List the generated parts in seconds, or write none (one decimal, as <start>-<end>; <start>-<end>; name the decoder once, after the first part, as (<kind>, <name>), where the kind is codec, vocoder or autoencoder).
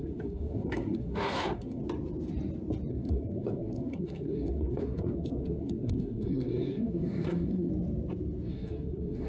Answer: 0.0-1.8 (codec, SNAC); 2.9-7.7; 8.5-9.3